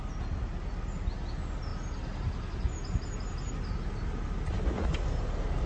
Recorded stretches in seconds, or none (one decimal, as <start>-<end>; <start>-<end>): 0.0-5.7